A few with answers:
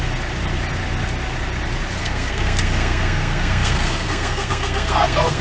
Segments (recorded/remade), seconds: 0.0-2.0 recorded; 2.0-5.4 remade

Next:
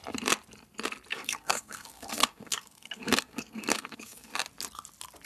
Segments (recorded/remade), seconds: 0.0-1.1 recorded; 1.1-4.3 remade; 4.3-5.3 recorded

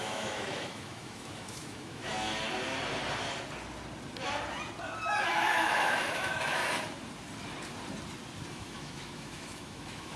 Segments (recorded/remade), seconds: 0.0-2.1 remade; 2.1-5.2 recorded; 5.2-6.6 remade; 6.6-8.5 recorded; 8.5-10.2 remade

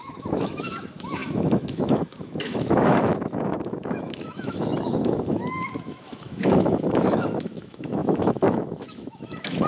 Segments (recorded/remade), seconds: 0.0-9.7 remade

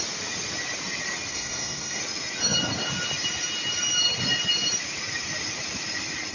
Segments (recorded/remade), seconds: 0.0-1.3 recorded; 1.3-2.0 remade; 2.0-6.3 recorded

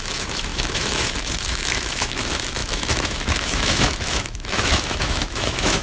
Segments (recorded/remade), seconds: 0.0-5.8 remade